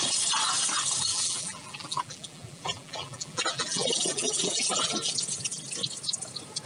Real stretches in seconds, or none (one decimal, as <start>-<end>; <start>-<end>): 0.0-1.1; 5.1-6.7